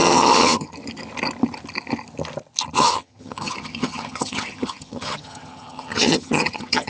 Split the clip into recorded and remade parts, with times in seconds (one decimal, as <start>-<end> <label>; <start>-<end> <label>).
0.0-0.7 remade; 0.7-2.8 recorded; 2.8-6.9 remade